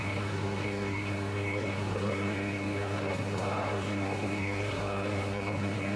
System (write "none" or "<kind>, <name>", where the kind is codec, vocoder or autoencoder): codec, SNAC